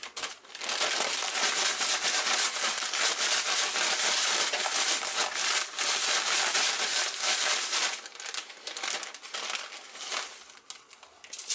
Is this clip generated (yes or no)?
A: no